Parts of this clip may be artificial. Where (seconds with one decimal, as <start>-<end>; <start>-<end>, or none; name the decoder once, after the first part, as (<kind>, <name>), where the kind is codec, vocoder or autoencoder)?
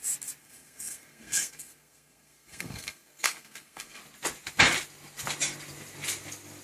0.4-4.0 (codec, SNAC)